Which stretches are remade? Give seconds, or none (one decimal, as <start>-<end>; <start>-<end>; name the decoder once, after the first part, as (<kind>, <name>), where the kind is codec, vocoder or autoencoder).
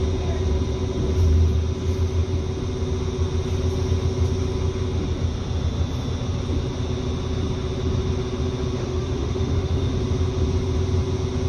8.8-9.9 (autoencoder, DAC-VAE)